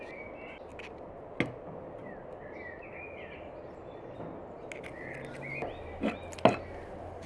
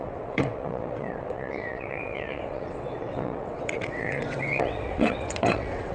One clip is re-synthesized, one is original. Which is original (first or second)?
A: first